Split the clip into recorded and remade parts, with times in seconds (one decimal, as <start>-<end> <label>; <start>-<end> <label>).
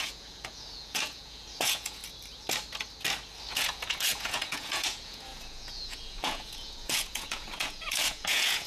0.0-2.0 remade; 2.0-3.5 recorded; 3.5-8.7 remade